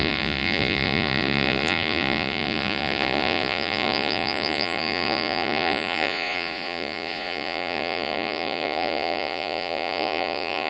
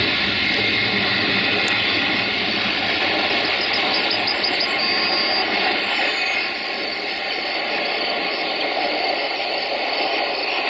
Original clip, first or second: second